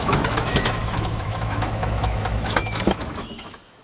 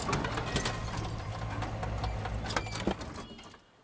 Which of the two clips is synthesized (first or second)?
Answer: first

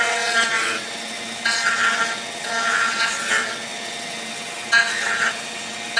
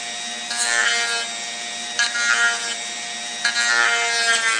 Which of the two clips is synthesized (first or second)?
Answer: first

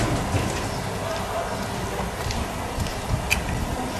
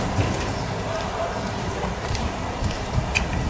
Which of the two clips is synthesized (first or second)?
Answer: second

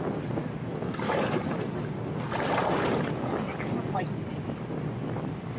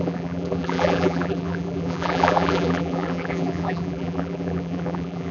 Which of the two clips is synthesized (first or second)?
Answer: second